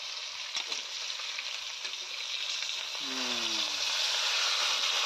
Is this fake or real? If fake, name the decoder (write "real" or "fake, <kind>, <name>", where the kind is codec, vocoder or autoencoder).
real